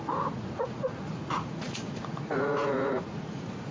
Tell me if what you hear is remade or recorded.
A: remade